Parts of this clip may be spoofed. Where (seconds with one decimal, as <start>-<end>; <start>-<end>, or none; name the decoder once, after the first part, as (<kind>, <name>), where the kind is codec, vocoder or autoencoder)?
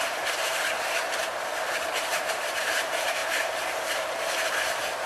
0.0-1.2 (vocoder, BigVGAN v2); 2.1-5.1